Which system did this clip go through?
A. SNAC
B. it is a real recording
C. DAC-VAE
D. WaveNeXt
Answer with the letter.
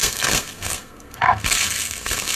A